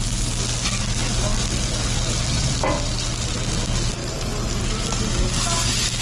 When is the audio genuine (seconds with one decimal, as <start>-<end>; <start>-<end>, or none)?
0.0-4.0; 5.1-6.0